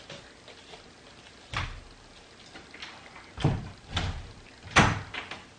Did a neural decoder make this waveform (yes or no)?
no